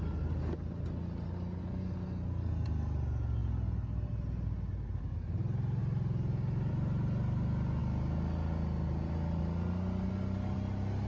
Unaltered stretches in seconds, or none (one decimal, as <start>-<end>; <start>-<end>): 0.0-11.1